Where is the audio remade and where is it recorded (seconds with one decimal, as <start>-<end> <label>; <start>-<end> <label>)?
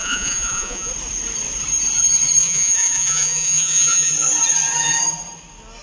0.0-0.9 remade; 0.9-2.4 recorded; 2.4-4.1 remade; 4.1-5.8 recorded